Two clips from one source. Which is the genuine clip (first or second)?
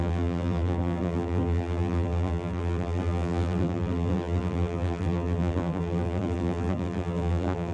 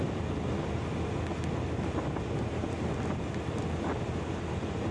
second